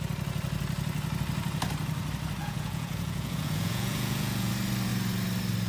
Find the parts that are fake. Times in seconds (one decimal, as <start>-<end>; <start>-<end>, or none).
2.4-4.5